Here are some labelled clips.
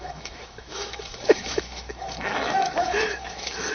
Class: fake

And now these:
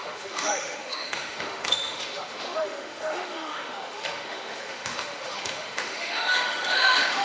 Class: fake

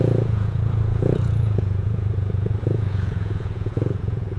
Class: fake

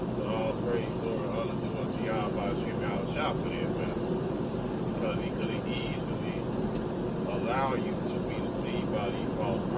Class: real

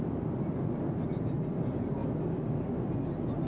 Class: real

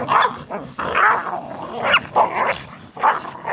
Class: real